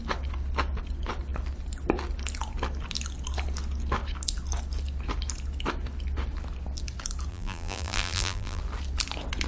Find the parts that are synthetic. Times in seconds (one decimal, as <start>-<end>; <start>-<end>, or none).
7.3-8.6